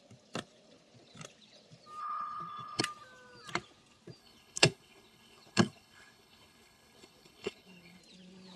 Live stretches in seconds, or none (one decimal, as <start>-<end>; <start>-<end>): 0.0-2.0; 2.8-4.2; 8.0-8.6